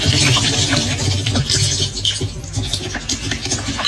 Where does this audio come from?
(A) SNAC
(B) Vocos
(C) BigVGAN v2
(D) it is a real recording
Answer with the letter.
D